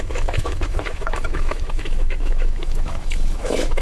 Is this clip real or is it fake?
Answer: fake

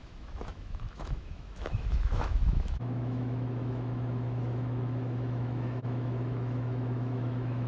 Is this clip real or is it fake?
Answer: fake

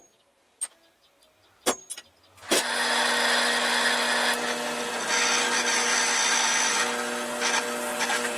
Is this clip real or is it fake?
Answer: real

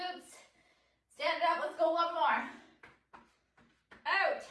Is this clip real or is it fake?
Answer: real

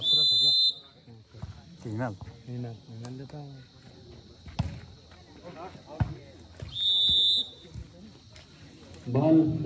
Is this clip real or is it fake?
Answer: real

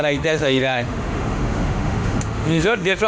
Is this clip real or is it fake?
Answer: fake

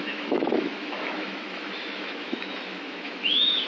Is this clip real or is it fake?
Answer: fake